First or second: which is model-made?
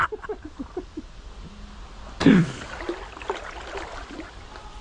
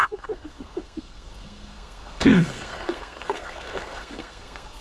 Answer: second